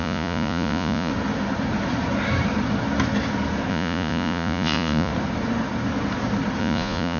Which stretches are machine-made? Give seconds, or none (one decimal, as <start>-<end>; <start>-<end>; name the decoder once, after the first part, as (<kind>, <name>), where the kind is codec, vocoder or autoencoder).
0.0-1.1 (vocoder, Vocos); 3.7-5.1; 6.6-7.2